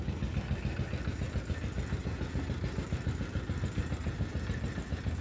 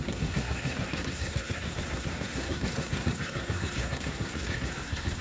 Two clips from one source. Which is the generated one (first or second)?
second